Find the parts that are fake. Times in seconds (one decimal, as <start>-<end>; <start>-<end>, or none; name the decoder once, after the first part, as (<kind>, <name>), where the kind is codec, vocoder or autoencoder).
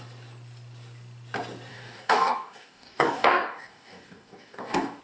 1.7-5.0 (codec, DAC)